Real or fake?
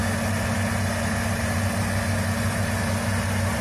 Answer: real